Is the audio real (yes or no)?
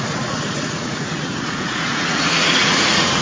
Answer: no